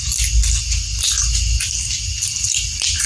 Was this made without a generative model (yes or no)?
yes